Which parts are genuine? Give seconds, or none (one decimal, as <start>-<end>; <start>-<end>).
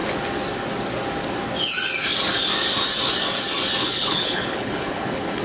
0.0-3.8